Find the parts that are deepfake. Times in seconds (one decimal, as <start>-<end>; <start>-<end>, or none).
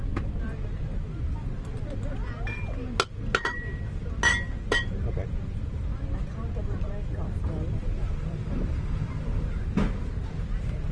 none